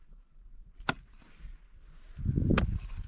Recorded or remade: recorded